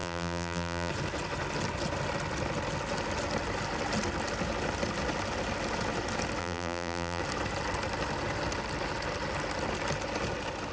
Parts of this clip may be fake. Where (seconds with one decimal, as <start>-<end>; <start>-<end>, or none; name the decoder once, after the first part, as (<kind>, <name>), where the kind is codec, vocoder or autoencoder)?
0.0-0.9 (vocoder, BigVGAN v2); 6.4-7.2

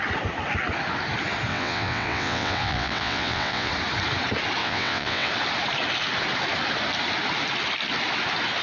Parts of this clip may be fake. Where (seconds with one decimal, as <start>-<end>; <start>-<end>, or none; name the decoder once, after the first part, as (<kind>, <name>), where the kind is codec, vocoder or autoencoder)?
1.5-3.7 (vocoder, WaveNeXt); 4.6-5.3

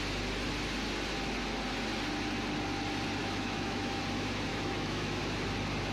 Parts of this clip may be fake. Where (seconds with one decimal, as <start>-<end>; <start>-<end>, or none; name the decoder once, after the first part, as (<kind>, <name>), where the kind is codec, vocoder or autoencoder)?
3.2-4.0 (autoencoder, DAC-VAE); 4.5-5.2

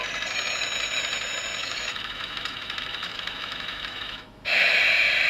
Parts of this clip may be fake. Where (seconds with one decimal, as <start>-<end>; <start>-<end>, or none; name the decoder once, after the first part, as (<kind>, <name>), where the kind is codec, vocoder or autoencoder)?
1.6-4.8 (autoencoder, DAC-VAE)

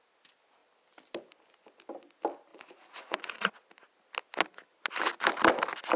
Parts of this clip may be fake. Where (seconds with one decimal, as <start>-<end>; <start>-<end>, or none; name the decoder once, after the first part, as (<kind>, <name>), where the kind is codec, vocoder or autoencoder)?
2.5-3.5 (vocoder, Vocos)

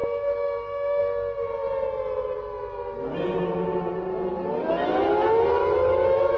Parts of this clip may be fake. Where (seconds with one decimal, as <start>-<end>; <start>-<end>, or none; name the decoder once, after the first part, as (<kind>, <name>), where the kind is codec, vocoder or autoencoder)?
0.0-1.0 (autoencoder, DAC-VAE); 5.6-6.4

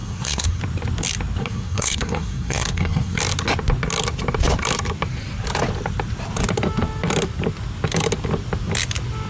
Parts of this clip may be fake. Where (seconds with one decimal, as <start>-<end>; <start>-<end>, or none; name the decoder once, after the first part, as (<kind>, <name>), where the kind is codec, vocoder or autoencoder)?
0.0-0.6 (codec, SNAC); 1.4-3.2